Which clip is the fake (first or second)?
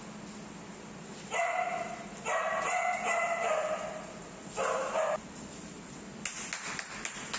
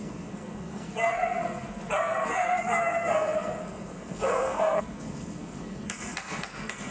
second